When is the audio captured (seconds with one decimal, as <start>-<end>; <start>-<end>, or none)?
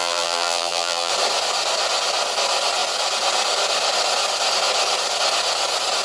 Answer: 1.1-6.0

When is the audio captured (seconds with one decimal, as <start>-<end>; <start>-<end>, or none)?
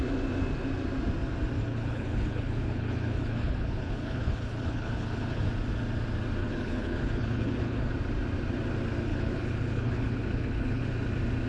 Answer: 0.0-1.6; 5.4-6.4; 7.9-9.1; 10.9-11.5